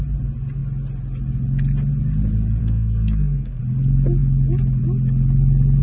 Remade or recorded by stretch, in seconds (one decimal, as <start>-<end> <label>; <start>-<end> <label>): 0.0-2.6 recorded; 2.6-3.6 remade; 3.6-5.8 recorded

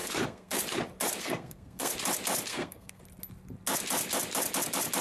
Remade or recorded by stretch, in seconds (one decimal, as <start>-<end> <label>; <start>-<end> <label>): 0.0-0.6 remade; 0.6-1.2 recorded; 1.2-1.9 remade; 1.9-2.5 recorded; 2.5-3.0 remade; 3.0-5.0 recorded

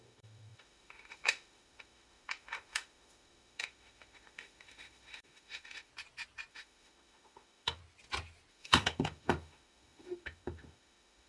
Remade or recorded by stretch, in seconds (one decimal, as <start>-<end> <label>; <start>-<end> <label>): 0.0-5.9 remade; 5.9-6.5 recorded; 6.5-7.8 remade; 7.8-8.5 recorded; 8.5-11.3 remade

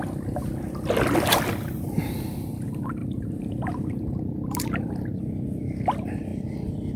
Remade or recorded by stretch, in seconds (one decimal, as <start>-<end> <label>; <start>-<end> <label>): 0.0-3.0 recorded; 3.0-5.2 remade; 5.2-7.0 recorded

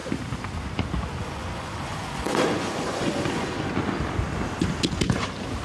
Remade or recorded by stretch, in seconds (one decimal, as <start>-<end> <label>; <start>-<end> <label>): 0.0-1.2 recorded; 1.2-3.7 remade; 3.7-5.6 recorded

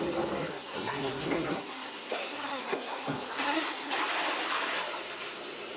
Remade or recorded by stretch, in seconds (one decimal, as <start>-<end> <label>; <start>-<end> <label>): 0.0-0.5 recorded; 0.5-4.0 remade; 4.0-5.8 recorded